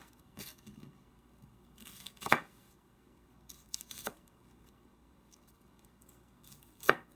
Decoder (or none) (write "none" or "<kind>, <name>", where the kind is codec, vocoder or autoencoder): codec, SNAC